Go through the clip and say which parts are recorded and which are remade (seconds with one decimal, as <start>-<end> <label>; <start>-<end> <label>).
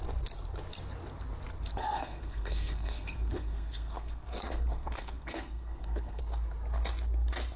0.0-1.8 recorded; 1.8-6.2 remade; 6.2-7.6 recorded